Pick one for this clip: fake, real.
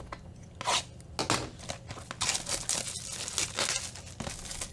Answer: real